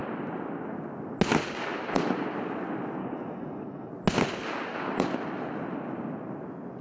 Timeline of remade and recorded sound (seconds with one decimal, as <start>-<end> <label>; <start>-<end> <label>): 0.0-3.0 recorded; 3.0-3.9 remade; 3.9-6.8 recorded